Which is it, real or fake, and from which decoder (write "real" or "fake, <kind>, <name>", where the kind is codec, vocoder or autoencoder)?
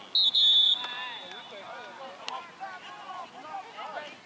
real